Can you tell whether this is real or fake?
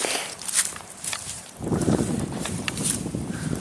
fake